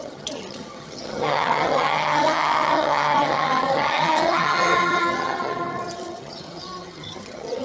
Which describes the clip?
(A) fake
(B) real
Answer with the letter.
A